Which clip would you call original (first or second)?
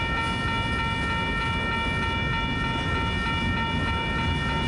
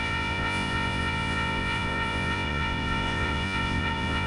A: first